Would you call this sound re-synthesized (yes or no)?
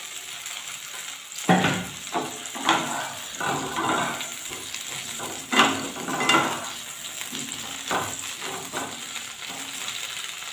no